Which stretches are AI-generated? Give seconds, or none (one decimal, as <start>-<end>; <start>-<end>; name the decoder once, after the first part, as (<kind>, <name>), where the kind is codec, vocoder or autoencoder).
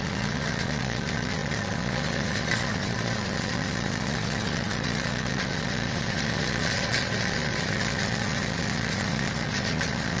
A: 0.0-10.2 (vocoder, Vocos)